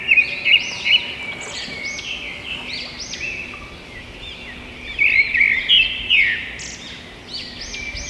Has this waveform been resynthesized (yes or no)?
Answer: no